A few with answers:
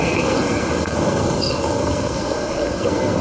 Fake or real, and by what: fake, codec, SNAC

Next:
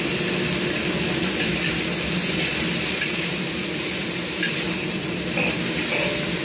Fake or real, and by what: real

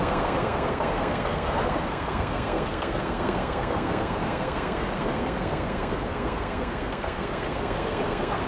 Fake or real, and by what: fake, codec, SNAC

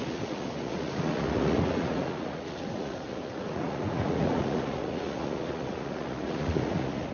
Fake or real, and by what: fake, vocoder, Vocos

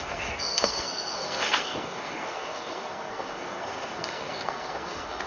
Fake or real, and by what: fake, codec, SNAC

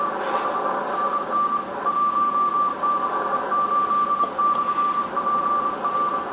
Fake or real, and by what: real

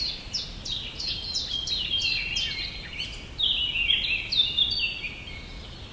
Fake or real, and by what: real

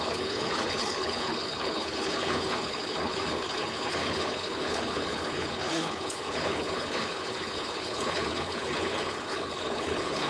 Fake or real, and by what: fake, codec, HILCodec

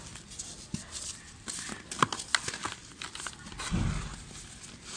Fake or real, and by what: real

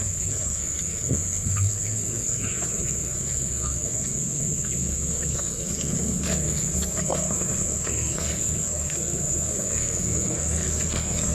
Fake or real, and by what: fake, codec, SNAC